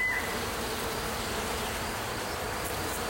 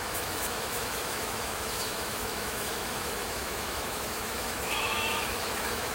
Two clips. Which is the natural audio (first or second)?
first